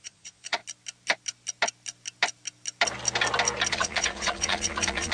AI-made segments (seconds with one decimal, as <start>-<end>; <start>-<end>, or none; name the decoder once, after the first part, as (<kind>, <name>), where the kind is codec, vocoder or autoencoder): 0.0-0.6 (vocoder, Vocos); 3.7-5.1